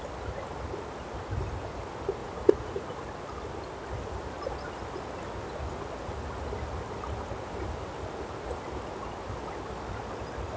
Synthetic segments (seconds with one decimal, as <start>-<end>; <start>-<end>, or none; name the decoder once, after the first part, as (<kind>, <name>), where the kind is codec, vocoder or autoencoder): 2.2-2.8 (vocoder, Vocos)